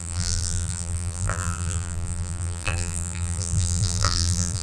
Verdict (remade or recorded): remade